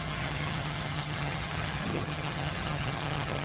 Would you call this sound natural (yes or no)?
no